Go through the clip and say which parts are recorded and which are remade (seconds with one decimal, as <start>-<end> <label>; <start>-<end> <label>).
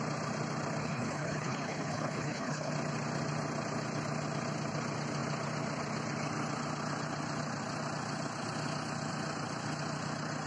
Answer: 0.0-0.8 recorded; 0.8-2.7 remade; 2.7-10.5 recorded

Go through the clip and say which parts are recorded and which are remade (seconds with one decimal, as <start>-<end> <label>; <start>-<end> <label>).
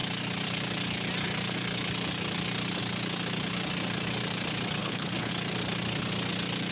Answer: 0.0-4.8 recorded; 4.8-5.3 remade; 5.3-6.7 recorded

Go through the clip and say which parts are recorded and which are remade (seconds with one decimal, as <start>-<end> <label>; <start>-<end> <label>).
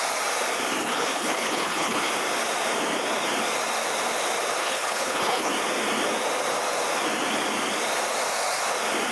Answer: 0.0-0.8 recorded; 0.8-2.1 remade; 2.1-4.6 recorded; 4.6-5.5 remade; 5.5-9.1 recorded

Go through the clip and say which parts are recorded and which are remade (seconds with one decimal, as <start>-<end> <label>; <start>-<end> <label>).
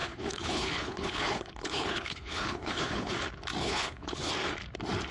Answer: 0.0-3.1 remade; 3.1-3.6 recorded; 3.6-4.3 remade; 4.3-5.1 recorded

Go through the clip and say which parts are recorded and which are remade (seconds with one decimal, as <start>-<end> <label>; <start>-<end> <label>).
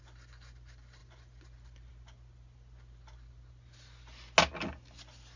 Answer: 0.0-5.4 recorded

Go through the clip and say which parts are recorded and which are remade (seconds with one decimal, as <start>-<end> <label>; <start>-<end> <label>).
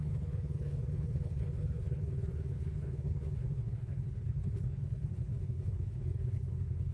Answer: 0.0-6.9 remade